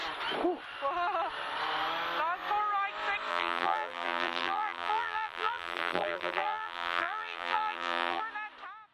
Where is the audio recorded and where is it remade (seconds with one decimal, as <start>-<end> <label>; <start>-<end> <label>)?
0.0-3.3 recorded; 3.3-8.2 remade; 8.2-8.9 recorded